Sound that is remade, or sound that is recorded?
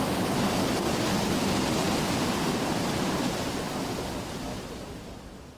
recorded